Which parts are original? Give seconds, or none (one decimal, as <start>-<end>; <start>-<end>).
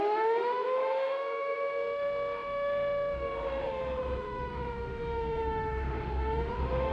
none